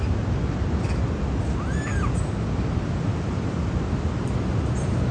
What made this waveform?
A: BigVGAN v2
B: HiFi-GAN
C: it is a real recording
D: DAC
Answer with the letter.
C